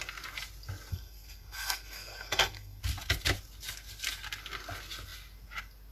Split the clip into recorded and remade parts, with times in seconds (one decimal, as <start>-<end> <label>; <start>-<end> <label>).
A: 0.0-0.9 recorded; 0.9-2.8 remade; 2.8-5.9 recorded